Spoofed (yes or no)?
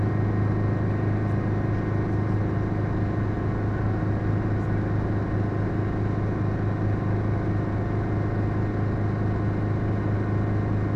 no